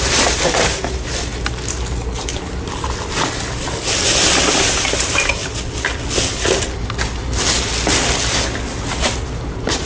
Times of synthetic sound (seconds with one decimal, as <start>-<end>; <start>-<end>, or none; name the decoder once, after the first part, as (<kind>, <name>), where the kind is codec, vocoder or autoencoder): 0.0-1.3 (vocoder, BigVGAN v2); 4.5-5.4; 9.2-9.9